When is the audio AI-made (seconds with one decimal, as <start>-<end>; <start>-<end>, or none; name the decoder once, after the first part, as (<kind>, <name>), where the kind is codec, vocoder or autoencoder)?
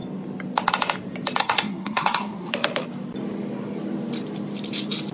1.4-2.5 (codec, SNAC)